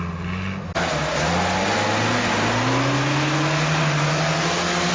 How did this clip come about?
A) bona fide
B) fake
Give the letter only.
A